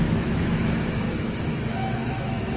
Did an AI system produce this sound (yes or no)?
yes